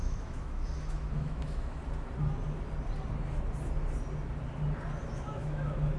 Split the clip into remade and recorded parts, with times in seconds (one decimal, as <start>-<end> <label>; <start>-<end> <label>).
0.0-1.8 remade; 1.8-5.0 recorded; 5.0-6.0 remade